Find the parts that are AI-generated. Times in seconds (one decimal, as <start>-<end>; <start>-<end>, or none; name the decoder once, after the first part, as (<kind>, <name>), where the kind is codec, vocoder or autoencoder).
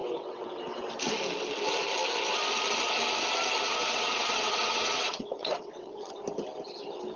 0.0-0.9 (vocoder, WaveNeXt); 3.8-6.1